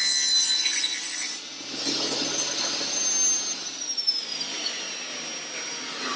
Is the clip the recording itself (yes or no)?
yes